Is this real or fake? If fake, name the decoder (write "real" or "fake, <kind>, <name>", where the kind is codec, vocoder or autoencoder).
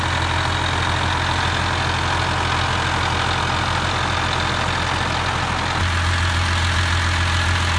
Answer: real